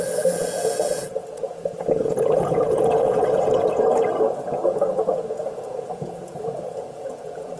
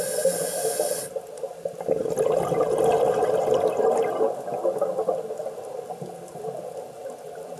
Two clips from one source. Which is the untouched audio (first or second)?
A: second